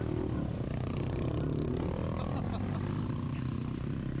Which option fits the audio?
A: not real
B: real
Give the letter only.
B